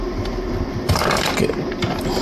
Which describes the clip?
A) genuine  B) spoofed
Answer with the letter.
B